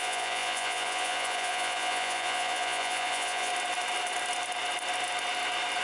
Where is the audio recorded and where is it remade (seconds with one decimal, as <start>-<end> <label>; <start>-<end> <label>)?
0.0-3.5 remade; 3.5-5.8 recorded